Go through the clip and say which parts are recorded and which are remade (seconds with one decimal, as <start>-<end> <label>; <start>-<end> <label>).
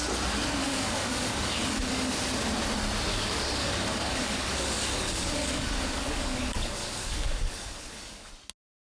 0.0-0.6 recorded; 0.6-2.1 remade; 2.1-3.1 recorded; 3.1-8.3 remade; 8.3-9.0 recorded